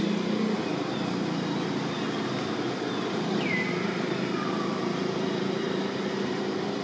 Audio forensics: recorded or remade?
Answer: recorded